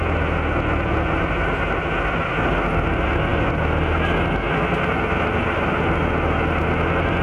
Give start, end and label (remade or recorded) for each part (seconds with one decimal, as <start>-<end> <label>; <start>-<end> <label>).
0.0-7.2 recorded